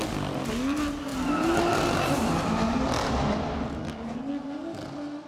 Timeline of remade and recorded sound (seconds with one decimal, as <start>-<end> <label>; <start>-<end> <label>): 0.0-5.3 recorded